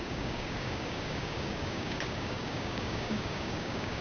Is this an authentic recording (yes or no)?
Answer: no